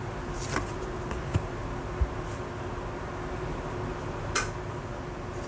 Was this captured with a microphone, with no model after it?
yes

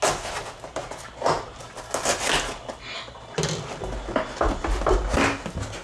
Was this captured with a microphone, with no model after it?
yes